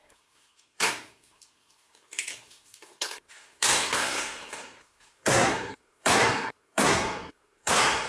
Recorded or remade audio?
remade